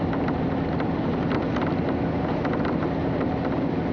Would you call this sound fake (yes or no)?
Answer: no